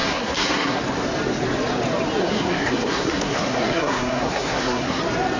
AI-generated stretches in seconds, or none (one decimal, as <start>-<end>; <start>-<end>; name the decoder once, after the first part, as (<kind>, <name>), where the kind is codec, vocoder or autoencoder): 0.0-0.8 (codec, SNAC); 2.2-5.0